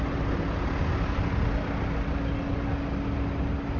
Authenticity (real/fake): real